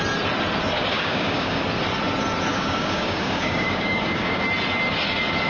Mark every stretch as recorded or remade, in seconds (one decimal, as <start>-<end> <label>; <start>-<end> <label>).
0.0-0.9 recorded; 0.9-1.6 remade; 1.6-2.5 recorded; 2.5-4.4 remade; 4.4-5.5 recorded